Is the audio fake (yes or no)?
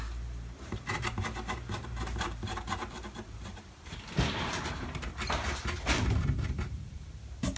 yes